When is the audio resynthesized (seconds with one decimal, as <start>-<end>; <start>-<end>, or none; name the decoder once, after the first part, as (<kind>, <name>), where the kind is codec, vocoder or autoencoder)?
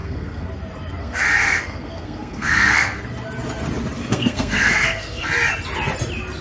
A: 0.0-0.5 (codec, SNAC); 1.0-3.0; 4.0-5.3